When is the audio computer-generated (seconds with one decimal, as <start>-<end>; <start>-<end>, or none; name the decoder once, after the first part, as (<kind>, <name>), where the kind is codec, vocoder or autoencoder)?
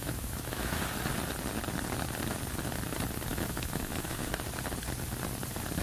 0.0-0.8 (autoencoder, DAC-VAE); 3.3-4.3